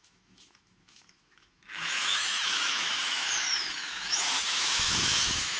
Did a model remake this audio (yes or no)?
yes